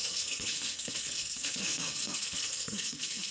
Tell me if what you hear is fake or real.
fake